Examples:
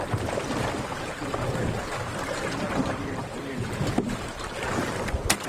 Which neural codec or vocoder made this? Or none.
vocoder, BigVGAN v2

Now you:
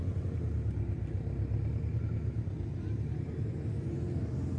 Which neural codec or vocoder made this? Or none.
none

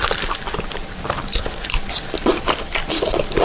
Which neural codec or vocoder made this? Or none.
none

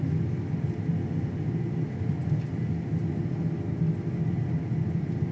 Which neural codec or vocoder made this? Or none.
none